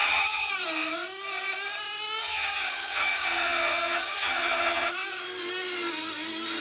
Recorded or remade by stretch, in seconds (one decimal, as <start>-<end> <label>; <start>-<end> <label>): 0.0-0.5 remade; 0.5-2.2 recorded; 2.2-4.9 remade; 4.9-6.6 recorded